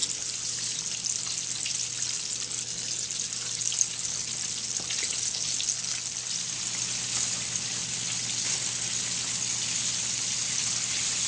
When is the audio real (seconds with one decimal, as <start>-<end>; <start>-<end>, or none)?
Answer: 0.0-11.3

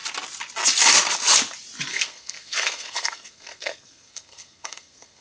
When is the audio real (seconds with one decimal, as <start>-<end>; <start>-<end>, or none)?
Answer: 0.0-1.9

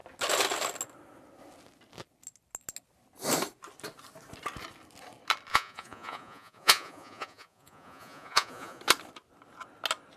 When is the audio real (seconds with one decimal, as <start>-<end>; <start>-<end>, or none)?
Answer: 0.0-5.5; 8.8-10.2

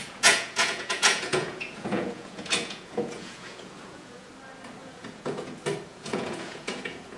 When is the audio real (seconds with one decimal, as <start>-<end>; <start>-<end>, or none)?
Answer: 4.3-4.8; 5.5-5.9

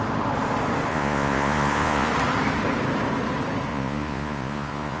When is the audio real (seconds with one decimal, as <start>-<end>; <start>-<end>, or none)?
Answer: 0.0-0.9; 2.1-3.7